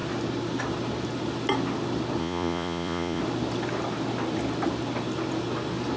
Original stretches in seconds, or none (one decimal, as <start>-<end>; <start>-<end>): 0.0-2.2; 3.2-6.0